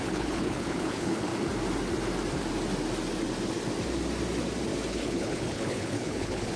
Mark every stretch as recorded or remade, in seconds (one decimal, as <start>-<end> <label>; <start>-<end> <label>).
0.0-1.3 remade; 1.3-4.9 recorded; 4.9-6.6 remade